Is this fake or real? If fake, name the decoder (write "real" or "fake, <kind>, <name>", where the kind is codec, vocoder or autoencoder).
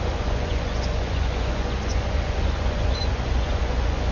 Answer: fake, vocoder, Vocos